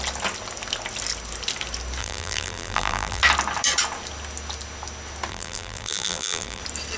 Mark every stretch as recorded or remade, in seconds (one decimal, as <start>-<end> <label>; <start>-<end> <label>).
0.0-2.0 recorded; 2.0-3.2 remade; 3.2-5.3 recorded; 5.3-6.6 remade; 6.6-7.0 recorded